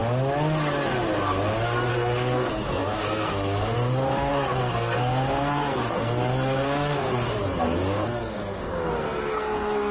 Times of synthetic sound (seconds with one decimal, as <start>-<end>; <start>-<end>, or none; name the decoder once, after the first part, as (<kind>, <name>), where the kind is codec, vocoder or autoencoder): 1.9-9.9 (codec, SNAC)